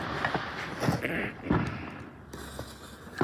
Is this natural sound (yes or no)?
yes